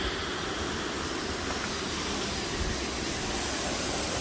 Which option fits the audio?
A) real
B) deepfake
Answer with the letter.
A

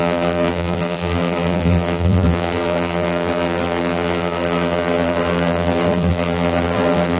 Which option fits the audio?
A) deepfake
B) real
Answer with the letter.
A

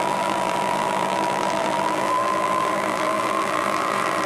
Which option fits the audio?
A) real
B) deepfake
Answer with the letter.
B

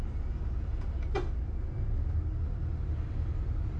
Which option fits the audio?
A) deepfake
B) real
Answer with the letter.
B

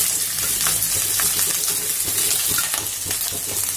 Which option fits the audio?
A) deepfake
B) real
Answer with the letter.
B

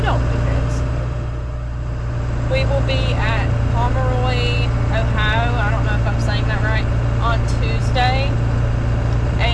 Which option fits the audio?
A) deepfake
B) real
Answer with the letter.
B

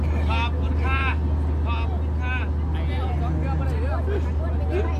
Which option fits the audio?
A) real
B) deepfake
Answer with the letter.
A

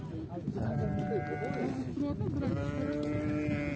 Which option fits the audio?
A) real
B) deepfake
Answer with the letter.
A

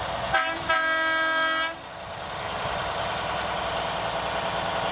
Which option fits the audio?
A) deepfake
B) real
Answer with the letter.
B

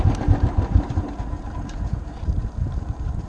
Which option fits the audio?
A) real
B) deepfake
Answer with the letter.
B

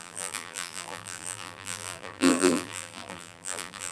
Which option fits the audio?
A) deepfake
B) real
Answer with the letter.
A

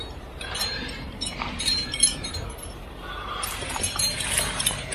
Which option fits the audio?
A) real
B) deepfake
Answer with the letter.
B